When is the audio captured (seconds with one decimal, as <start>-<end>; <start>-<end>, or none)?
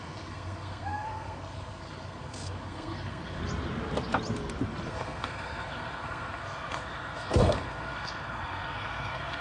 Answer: 3.4-4.9